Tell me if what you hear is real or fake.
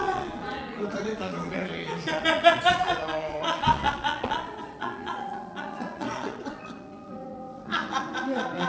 fake